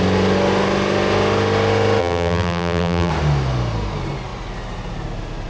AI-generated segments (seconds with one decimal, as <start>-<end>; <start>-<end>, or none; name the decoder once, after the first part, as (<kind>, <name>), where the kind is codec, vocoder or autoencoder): 2.0-3.1 (vocoder, BigVGAN v2)